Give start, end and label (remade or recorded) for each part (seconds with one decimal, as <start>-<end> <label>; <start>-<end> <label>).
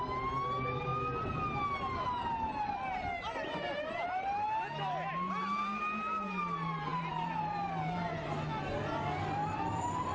0.0-10.1 recorded